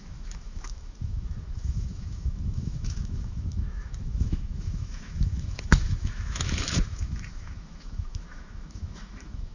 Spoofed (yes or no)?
yes